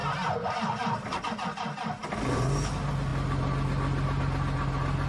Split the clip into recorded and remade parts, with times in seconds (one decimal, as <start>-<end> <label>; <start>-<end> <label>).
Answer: 0.0-5.1 recorded